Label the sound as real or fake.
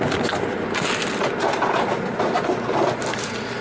real